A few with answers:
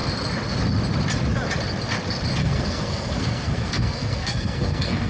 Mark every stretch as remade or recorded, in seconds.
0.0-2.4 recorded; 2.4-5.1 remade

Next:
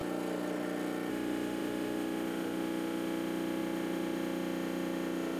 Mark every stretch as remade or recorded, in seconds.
0.0-1.1 recorded; 1.1-5.4 remade

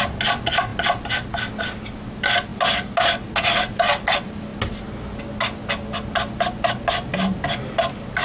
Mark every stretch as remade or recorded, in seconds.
0.0-8.2 recorded

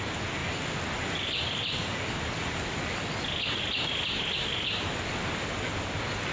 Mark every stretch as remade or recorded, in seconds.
0.0-6.3 recorded

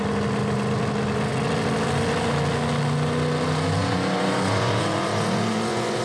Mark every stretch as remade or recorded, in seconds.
0.0-3.8 recorded; 3.8-6.0 remade

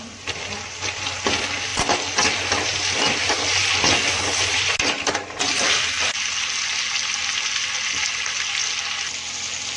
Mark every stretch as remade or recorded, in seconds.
0.0-9.8 recorded

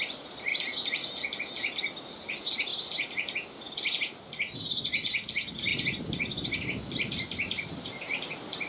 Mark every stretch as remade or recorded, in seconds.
0.0-8.7 recorded